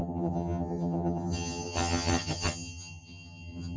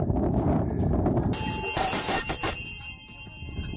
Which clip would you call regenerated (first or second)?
first